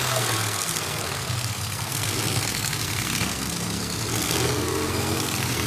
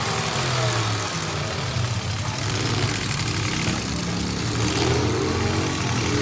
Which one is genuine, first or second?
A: second